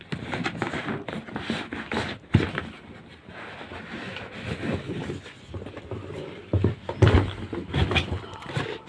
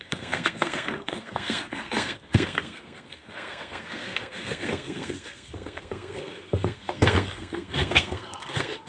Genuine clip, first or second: first